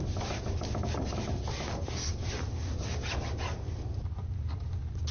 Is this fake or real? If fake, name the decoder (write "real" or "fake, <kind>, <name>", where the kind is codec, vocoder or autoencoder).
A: real